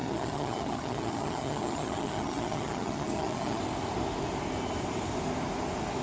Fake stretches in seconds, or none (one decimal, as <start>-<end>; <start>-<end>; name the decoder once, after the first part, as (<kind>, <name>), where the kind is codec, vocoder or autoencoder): 0.0-3.6 (vocoder, HiFi-GAN)